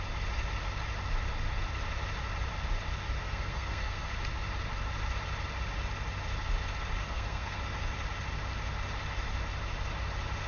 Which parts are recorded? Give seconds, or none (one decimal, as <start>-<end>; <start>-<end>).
0.0-3.2; 4.1-7.0; 7.6-10.5